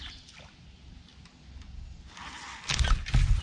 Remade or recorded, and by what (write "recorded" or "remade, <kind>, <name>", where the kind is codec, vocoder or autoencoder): recorded